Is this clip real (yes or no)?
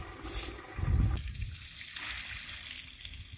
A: yes